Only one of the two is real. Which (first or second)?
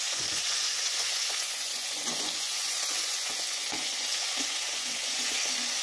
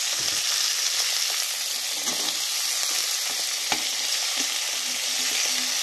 second